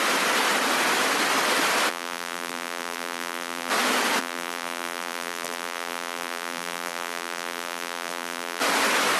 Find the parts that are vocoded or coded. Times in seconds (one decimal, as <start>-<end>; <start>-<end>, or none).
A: 1.9-3.7; 4.2-8.6